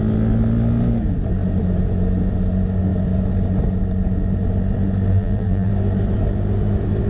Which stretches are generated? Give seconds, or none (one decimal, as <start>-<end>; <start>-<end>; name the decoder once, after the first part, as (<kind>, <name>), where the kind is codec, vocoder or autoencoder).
5.1-5.7 (vocoder, BigVGAN v2)